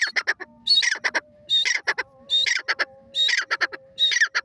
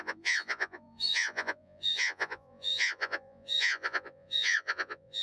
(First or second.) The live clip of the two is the first